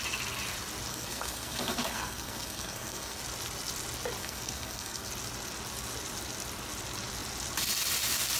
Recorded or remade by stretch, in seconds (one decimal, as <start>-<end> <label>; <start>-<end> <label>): 0.0-0.9 recorded; 0.9-3.2 remade; 3.2-4.2 recorded; 4.2-5.1 remade; 5.1-8.4 recorded